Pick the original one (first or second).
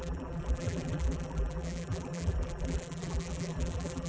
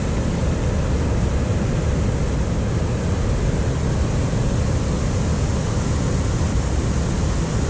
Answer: second